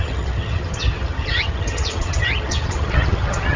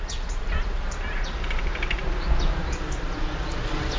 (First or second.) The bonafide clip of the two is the second